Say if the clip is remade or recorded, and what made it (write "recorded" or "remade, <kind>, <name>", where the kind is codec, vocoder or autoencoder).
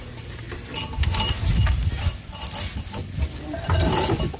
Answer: recorded